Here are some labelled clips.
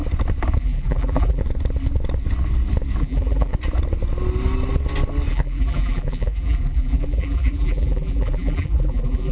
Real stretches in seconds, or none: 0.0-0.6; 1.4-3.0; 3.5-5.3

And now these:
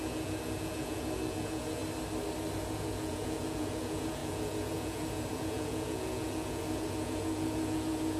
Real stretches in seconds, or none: 1.8-2.6

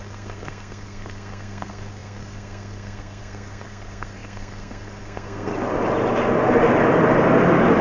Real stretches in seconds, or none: 5.5-7.8

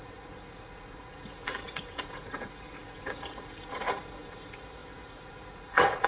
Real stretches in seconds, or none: none

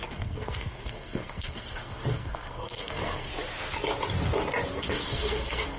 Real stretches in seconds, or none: 3.3-4.7

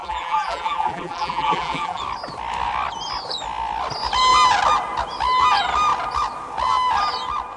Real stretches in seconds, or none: 2.0-7.6